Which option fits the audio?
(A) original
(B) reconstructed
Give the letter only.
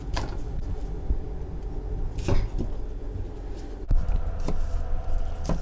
A